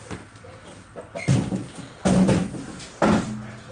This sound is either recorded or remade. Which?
recorded